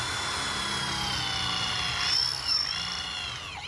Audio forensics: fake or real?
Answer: real